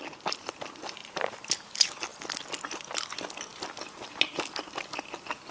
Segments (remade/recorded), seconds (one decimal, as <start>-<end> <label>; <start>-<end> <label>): 0.0-5.5 recorded